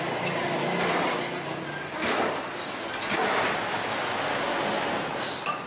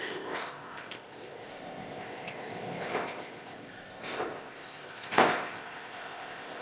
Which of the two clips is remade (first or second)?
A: second